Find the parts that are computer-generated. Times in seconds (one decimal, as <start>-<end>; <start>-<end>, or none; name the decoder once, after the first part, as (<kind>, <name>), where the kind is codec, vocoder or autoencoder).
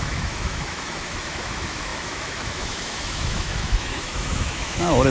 0.0-5.1 (autoencoder, DAC-VAE)